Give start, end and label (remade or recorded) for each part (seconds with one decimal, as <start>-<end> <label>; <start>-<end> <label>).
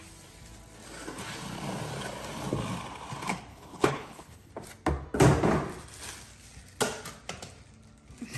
0.0-3.5 recorded; 3.5-4.5 remade; 4.5-8.4 recorded